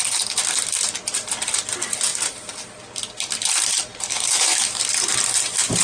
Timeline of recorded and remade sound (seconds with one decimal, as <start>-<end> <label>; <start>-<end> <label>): 0.0-4.1 recorded; 4.1-4.8 remade; 4.8-5.8 recorded